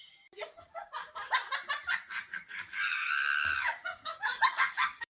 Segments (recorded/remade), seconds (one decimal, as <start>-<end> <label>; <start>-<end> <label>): 0.0-0.8 remade; 0.8-2.4 recorded; 2.4-5.1 remade